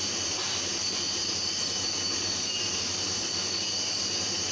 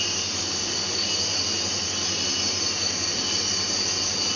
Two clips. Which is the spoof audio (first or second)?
first